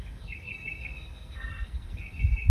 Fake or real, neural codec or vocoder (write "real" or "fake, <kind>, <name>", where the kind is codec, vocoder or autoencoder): fake, codec, SNAC